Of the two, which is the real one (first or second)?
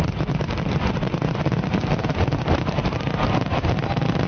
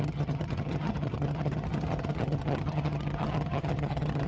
first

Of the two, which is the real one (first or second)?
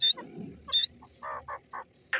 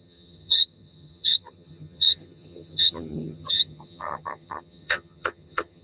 first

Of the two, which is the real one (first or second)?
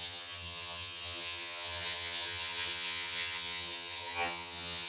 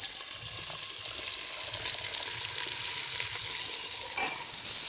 second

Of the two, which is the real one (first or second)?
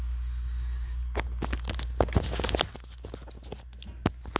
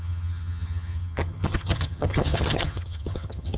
first